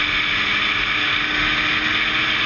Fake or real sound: real